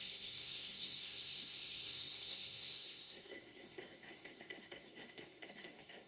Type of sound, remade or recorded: remade